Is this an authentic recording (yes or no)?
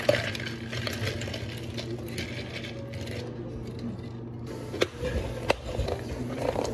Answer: yes